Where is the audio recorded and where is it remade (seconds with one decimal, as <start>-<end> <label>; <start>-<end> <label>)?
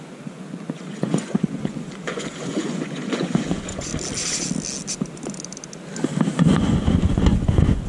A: 0.0-3.9 remade; 3.9-6.4 recorded; 6.4-7.9 remade